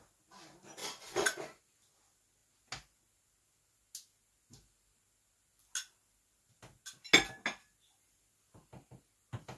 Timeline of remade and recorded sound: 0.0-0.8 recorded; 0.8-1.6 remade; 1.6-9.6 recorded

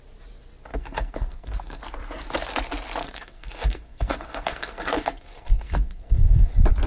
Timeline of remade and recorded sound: 0.0-0.7 recorded; 0.7-1.8 remade; 1.8-3.0 recorded; 3.0-6.5 remade; 6.5-6.9 recorded

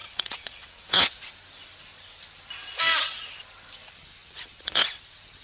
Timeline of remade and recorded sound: 0.0-1.2 remade; 1.2-4.2 recorded; 4.2-5.0 remade; 5.0-5.4 recorded

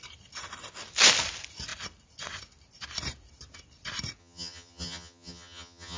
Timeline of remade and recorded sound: 0.0-4.2 recorded; 4.2-6.0 remade